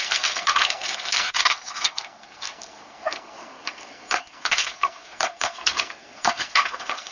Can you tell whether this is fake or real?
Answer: fake